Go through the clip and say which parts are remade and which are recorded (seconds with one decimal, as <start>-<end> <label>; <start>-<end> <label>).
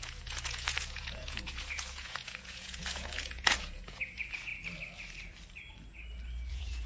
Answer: 0.0-4.5 remade; 4.5-6.5 recorded; 6.5-6.9 remade